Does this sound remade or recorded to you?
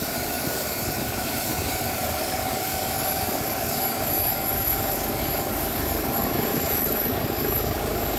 remade